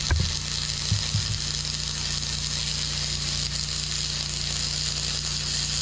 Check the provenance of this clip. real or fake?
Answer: real